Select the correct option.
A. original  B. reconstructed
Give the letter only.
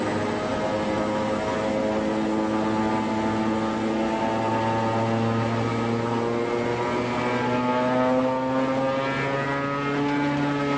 A